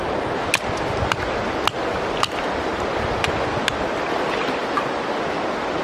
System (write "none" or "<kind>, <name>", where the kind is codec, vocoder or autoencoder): none